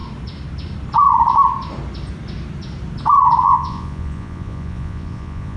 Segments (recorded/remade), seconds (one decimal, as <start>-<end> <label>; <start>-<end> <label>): 0.0-3.4 recorded; 3.4-5.6 remade